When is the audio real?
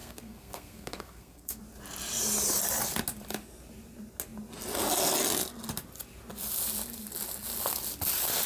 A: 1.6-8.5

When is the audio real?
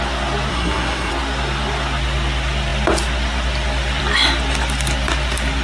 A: 0.0-0.5; 1.1-5.6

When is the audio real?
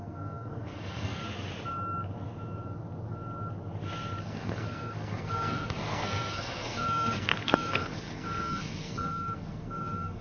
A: 1.2-4.2